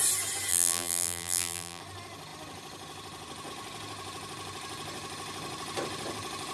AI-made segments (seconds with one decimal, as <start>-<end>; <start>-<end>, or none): 0.5-1.8